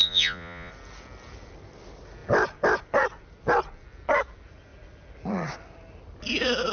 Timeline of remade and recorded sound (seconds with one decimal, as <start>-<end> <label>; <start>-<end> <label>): 0.0-0.7 remade; 0.7-6.7 recorded